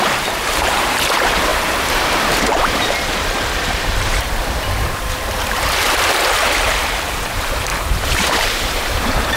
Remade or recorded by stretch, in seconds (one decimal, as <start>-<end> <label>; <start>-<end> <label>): 0.0-9.4 remade

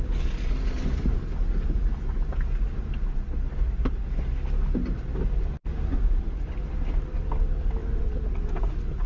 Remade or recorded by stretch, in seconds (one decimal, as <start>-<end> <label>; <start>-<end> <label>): 0.0-7.8 recorded; 7.8-8.7 remade; 8.7-9.1 recorded

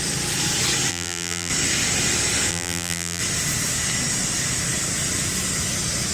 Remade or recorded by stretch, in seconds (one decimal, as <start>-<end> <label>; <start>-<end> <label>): 0.0-0.9 recorded; 0.9-1.5 remade; 1.5-2.5 recorded; 2.5-3.2 remade; 3.2-6.1 recorded

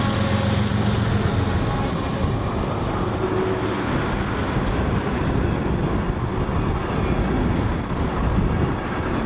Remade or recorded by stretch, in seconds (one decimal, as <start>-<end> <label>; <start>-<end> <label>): 0.0-2.1 recorded; 2.1-2.9 remade; 2.9-9.3 recorded